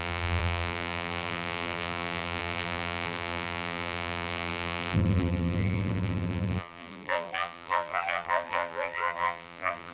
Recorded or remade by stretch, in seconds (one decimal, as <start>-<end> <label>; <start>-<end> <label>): 0.0-9.9 remade